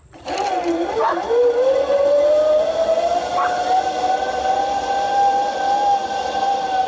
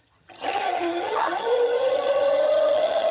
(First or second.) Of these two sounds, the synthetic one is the second